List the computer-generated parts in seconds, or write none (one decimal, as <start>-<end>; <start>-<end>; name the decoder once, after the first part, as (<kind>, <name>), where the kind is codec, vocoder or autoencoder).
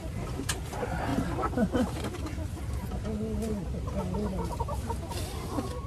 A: none